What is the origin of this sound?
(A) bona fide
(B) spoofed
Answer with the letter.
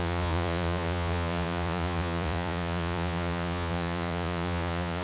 B